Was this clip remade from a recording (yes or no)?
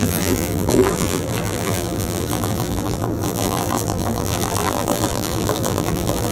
yes